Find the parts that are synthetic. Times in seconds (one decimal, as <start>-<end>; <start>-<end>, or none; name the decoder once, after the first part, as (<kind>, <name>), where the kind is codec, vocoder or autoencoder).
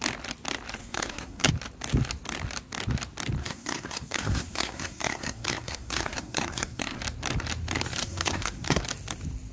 0.8-1.5 (codec, SNAC); 3.4-7.0; 8.0-8.8